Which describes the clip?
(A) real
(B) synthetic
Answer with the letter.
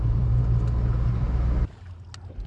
A